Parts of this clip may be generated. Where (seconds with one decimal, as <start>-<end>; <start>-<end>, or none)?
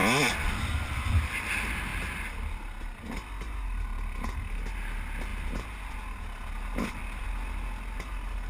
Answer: none